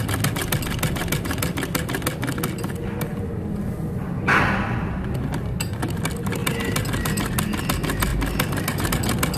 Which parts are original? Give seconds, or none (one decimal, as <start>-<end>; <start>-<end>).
0.0-9.4